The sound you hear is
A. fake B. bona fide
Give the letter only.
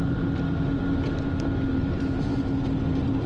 B